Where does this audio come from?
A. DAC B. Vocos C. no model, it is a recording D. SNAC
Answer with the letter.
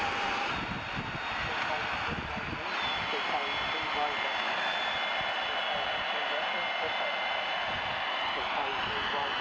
C